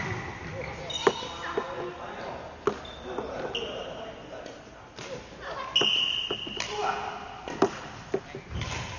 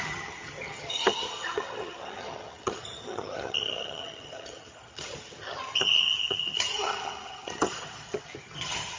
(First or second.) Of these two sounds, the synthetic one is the second